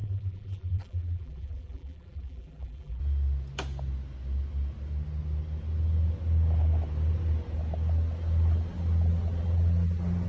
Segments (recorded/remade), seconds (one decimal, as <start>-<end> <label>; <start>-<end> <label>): 0.0-3.0 remade; 3.0-10.3 recorded

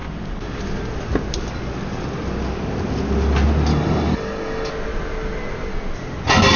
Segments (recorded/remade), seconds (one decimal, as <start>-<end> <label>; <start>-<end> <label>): 0.0-3.7 recorded; 3.7-4.7 remade; 4.7-6.6 recorded

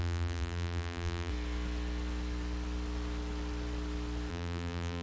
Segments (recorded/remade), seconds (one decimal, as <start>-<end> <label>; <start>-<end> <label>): 0.0-1.3 remade; 1.3-4.3 recorded; 4.3-5.0 remade

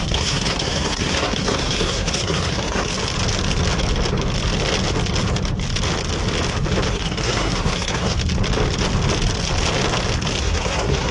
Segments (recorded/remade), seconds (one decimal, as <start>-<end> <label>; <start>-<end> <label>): 0.0-2.9 remade; 2.9-6.9 recorded; 6.9-8.2 remade; 8.2-10.4 recorded; 10.4-11.1 remade

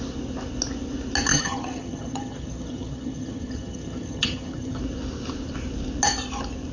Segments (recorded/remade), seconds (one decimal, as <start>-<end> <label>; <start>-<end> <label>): 0.0-1.3 recorded; 1.3-4.8 remade; 4.8-6.7 recorded

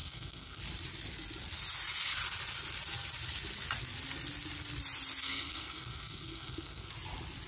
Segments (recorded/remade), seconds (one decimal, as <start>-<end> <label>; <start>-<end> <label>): 0.0-0.6 remade; 0.6-5.2 recorded; 5.2-6.9 remade; 6.9-7.5 recorded

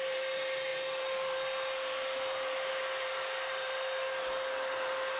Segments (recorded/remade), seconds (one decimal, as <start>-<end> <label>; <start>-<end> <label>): 0.0-5.2 recorded

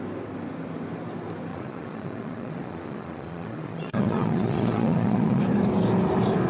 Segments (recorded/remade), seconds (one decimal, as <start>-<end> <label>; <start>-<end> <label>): 0.0-1.5 recorded; 1.5-5.4 remade; 5.4-6.5 recorded